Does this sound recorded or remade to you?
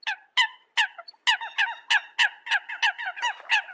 recorded